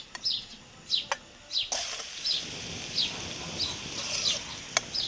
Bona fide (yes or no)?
yes